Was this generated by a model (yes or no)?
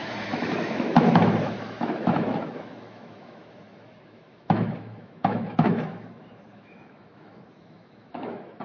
yes